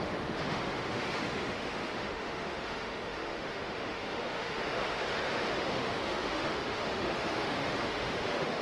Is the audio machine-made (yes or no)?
yes